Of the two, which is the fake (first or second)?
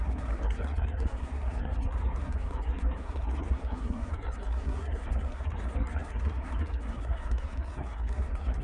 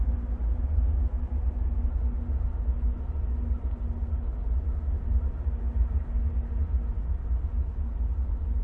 first